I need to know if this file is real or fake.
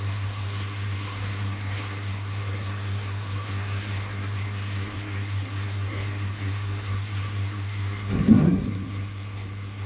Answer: fake